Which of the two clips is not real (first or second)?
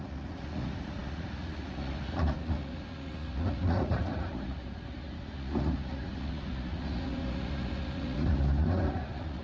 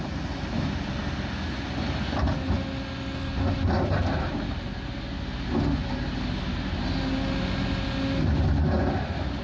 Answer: first